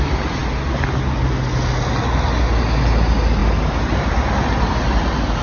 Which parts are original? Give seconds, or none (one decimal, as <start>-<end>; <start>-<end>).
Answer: 0.0-5.4